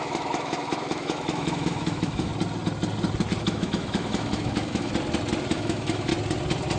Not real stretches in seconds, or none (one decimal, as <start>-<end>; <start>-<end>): 0.0-2.3; 3.4-4.9; 5.5-6.1